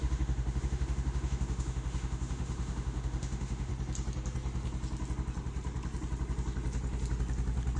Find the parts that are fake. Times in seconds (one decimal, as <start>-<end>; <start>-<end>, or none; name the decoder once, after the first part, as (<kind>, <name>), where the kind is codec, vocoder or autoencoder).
0.0-3.7 (autoencoder, DAC-VAE)